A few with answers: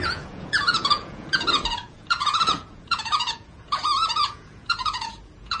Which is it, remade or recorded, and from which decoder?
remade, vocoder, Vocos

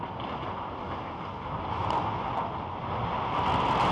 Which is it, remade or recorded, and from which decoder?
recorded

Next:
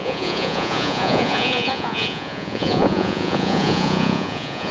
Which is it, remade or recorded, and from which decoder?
remade, vocoder, Vocos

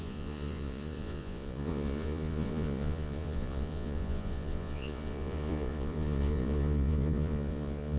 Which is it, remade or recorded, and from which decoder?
remade, vocoder, Vocos